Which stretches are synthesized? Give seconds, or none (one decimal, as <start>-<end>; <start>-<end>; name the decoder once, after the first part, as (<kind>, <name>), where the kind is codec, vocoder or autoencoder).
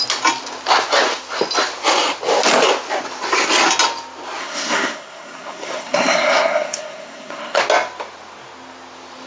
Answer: 4.4-7.6 (codec, SNAC)